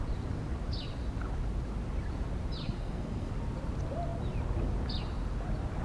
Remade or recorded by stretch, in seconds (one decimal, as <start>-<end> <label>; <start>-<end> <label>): 0.0-2.6 recorded; 2.6-3.3 remade; 3.3-5.8 recorded